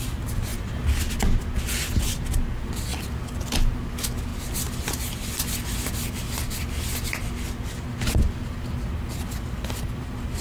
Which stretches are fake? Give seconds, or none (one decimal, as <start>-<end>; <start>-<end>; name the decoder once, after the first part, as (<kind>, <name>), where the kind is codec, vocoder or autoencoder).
none